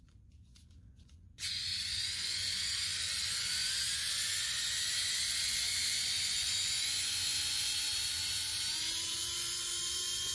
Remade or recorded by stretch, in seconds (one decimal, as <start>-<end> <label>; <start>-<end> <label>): 0.0-2.9 remade; 2.9-3.6 recorded; 3.6-7.9 remade; 7.9-8.7 recorded; 8.7-10.3 remade